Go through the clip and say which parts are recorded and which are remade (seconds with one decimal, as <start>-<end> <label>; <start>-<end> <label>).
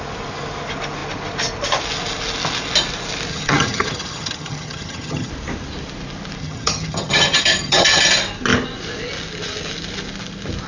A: 0.0-3.3 recorded; 3.3-5.3 remade; 5.3-6.4 recorded; 6.4-8.0 remade; 8.0-10.7 recorded